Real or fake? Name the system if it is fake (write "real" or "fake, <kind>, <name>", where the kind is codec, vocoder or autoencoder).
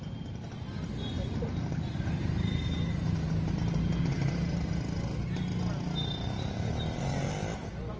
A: real